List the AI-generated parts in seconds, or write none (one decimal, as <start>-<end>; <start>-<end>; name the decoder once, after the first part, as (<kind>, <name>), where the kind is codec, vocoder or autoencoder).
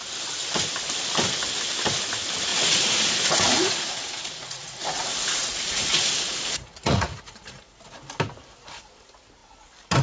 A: 2.5-7.7 (vocoder, Vocos)